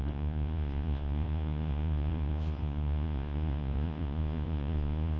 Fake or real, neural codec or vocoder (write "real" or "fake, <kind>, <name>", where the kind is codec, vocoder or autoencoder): fake, vocoder, Vocos